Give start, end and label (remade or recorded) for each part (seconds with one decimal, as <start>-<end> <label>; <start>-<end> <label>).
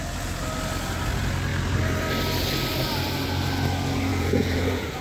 0.0-4.1 recorded; 4.1-5.0 remade